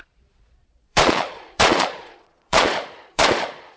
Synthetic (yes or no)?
yes